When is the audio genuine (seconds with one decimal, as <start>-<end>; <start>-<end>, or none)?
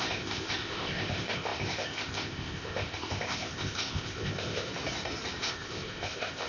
4.7-5.4